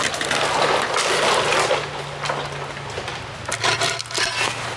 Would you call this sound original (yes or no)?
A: yes